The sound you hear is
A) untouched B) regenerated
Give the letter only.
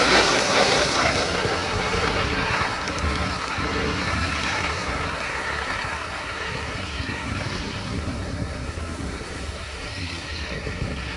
B